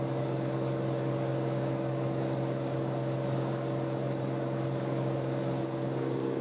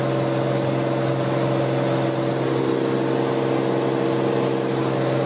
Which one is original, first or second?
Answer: second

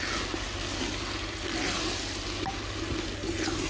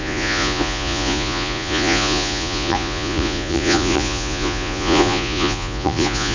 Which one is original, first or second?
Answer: first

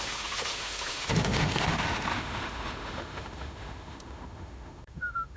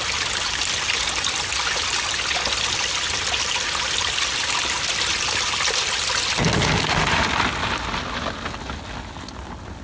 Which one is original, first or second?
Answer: second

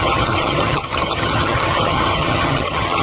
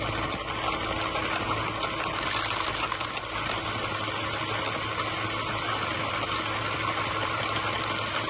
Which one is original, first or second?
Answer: second